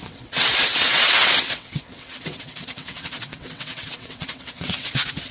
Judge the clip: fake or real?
fake